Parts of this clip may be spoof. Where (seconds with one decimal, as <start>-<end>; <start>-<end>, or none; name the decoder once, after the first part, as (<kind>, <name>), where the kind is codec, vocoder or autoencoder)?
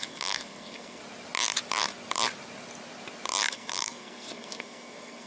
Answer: 0.0-1.0 (codec, SNAC); 3.5-5.3